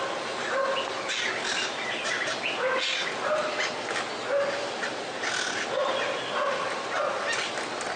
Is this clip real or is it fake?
real